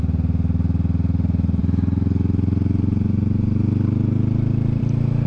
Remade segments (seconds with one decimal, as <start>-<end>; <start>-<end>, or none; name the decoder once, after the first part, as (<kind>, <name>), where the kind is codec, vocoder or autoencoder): none